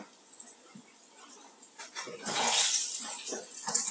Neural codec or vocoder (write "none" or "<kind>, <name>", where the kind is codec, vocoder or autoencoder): vocoder, Vocos